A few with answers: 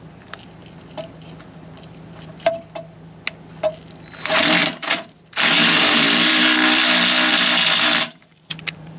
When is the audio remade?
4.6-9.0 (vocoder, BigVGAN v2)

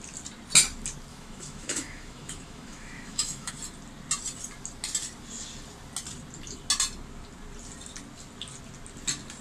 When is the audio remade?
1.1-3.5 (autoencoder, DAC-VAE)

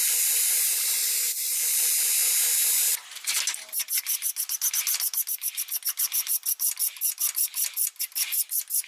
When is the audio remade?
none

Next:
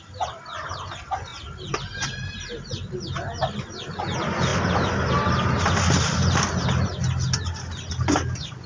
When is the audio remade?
none

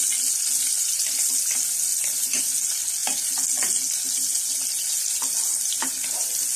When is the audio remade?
none

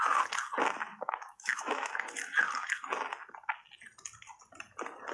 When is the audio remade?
0.9-1.9 (autoencoder, DAC-VAE)

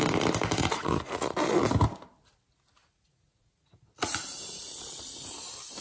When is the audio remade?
0.6-1.6 (vocoder, Vocos); 2.8-5.0

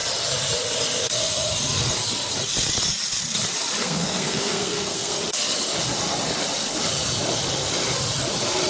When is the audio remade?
3.8-5.2 (codec, SNAC)